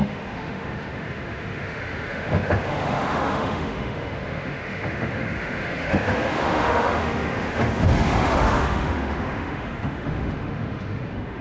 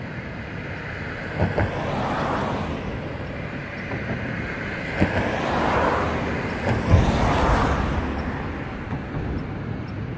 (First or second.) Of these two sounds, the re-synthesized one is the first